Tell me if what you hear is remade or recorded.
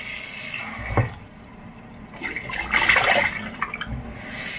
recorded